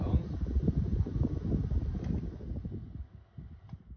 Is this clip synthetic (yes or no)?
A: no